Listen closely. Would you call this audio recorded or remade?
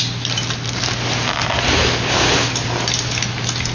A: recorded